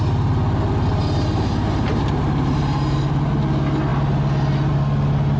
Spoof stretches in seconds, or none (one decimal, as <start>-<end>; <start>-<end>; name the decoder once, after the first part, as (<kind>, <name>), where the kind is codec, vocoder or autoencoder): 0.9-3.3 (vocoder, BigVGAN v2)

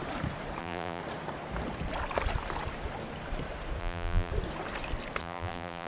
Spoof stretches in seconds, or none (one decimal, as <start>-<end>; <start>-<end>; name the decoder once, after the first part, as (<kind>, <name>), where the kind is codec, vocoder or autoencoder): 0.6-1.0 (vocoder, BigVGAN v2); 3.8-4.3; 5.2-5.9

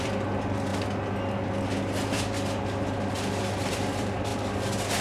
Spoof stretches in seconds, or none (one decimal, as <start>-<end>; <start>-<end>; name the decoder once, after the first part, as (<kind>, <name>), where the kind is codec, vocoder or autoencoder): 0.0-0.7 (vocoder, BigVGAN v2); 3.7-4.3

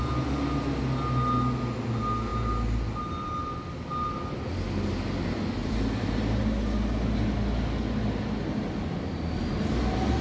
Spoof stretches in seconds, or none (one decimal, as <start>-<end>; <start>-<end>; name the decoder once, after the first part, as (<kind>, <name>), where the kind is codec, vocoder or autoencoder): 5.6-6.4 (vocoder, BigVGAN v2)

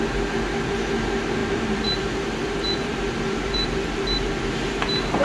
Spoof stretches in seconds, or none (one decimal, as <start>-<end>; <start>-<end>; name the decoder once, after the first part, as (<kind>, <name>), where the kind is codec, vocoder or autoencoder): 1.4-4.3 (vocoder, BigVGAN v2)